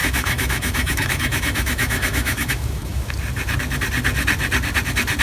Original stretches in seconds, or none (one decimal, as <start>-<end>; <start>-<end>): 3.1-5.2